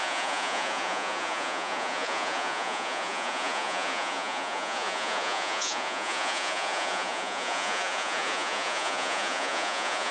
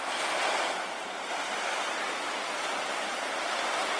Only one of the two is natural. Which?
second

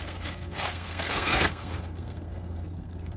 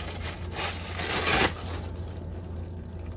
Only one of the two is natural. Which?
second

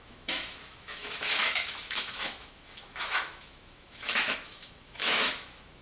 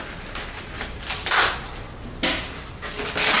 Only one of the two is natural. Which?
second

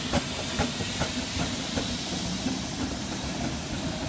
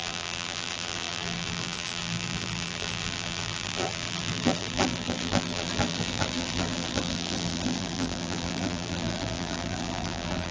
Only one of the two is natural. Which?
first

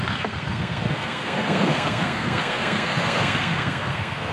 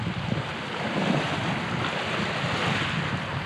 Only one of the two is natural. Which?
second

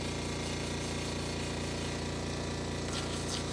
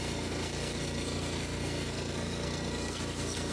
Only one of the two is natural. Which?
first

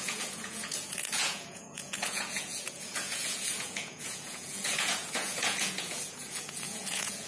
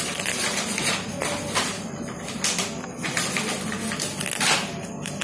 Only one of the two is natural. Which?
second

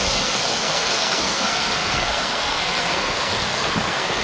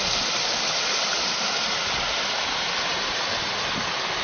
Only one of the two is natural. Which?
second